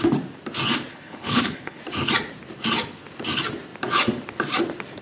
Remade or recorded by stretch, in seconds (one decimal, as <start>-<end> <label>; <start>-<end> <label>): 0.0-0.9 recorded; 0.9-1.8 remade; 1.8-5.0 recorded